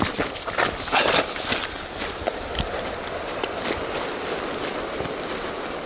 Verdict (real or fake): real